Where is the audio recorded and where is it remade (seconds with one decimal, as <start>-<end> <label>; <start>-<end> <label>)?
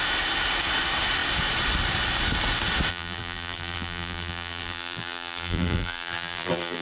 0.0-2.9 recorded; 2.9-6.8 remade